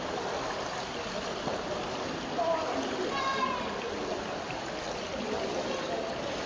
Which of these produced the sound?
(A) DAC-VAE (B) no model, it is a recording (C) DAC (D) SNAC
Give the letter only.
B